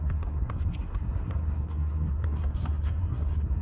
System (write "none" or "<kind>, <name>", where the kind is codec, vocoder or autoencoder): codec, SNAC